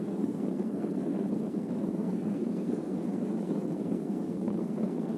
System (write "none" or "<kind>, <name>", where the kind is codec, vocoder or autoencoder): codec, SNAC